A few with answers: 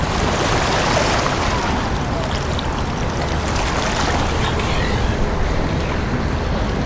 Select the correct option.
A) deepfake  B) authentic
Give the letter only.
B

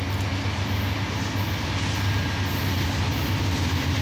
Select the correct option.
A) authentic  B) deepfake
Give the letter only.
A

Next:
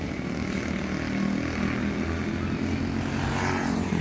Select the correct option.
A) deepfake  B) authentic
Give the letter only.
B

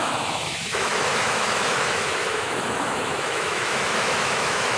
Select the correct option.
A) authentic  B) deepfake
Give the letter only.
B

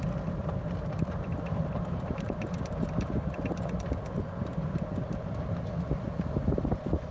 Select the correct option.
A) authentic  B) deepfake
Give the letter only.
A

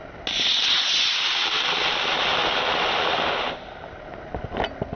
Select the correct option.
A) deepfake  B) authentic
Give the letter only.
B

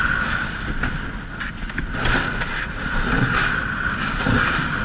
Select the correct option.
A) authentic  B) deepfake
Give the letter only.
A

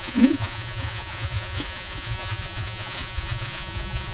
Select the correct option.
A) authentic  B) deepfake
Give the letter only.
B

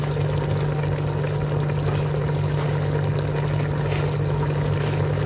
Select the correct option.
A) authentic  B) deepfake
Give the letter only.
A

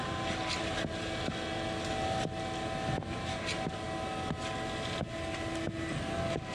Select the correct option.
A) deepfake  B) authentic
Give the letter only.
B